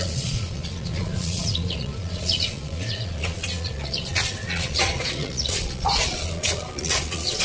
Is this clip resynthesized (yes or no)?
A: yes